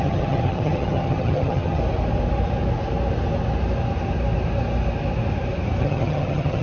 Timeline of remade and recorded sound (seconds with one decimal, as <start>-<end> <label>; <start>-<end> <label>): 0.0-1.8 remade; 1.8-5.8 recorded; 5.8-6.6 remade